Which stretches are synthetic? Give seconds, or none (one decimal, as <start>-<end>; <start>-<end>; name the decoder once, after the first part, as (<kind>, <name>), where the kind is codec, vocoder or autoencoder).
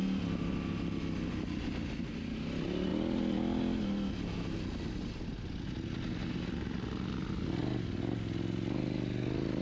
none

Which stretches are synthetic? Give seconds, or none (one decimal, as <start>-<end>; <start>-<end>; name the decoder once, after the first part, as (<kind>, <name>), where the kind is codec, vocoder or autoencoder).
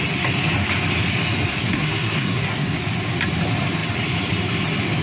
1.5-2.7 (codec, SNAC)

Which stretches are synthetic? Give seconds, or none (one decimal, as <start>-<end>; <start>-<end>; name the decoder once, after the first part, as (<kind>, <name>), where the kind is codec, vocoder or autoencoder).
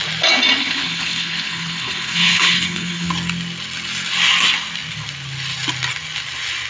0.6-3.1 (codec, HILCodec)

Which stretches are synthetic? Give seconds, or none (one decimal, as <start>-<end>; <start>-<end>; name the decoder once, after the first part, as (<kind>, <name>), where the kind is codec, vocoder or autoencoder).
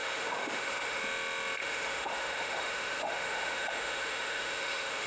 0.0-1.0 (autoencoder, DAC-VAE); 1.6-5.1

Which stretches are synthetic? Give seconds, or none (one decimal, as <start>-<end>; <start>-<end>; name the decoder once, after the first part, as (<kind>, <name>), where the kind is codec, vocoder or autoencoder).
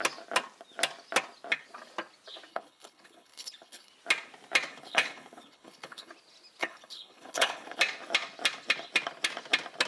2.5-3.9 (codec, HILCodec); 4.7-6.1; 6.6-7.8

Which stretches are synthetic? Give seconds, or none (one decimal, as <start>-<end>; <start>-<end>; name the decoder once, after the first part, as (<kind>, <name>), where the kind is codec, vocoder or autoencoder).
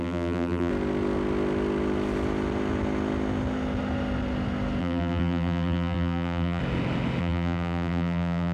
0.0-0.7 (vocoder, BigVGAN v2); 4.8-6.6; 7.2-8.5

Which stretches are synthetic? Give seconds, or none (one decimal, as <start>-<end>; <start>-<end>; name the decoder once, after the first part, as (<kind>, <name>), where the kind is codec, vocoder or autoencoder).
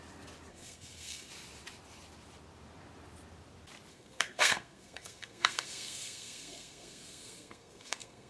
0.5-1.3 (codec, SNAC); 3.9-8.3